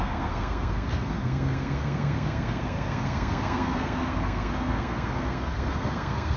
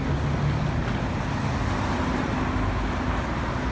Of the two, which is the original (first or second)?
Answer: second